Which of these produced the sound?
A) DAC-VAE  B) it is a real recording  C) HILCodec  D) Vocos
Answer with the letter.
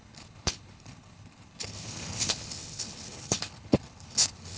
C